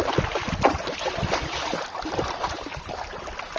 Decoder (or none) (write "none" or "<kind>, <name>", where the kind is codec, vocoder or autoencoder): none